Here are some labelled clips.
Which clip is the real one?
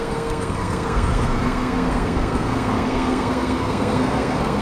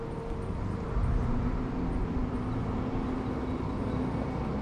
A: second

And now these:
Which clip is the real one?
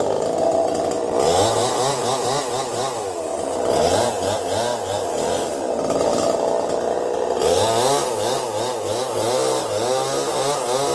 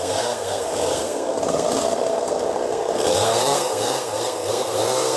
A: first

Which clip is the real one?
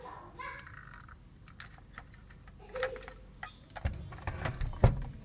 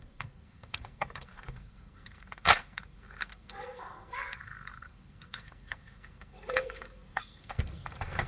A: first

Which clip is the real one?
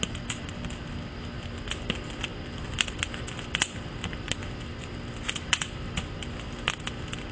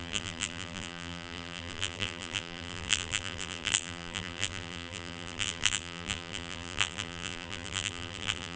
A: first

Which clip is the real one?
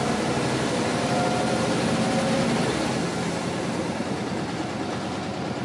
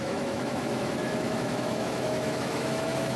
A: first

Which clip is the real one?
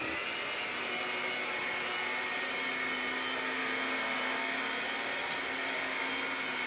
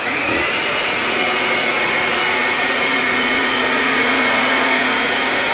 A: first